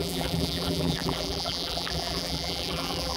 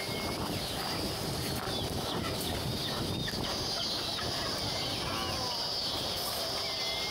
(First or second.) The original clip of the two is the second